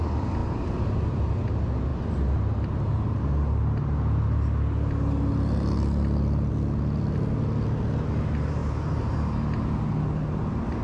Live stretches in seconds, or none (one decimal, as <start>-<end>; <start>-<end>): 0.0-10.8